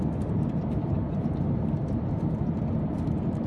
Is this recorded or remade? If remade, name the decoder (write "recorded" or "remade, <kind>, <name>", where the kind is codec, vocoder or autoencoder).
recorded